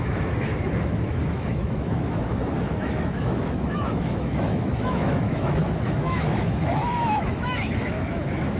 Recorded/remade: remade